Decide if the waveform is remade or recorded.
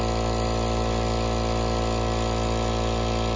recorded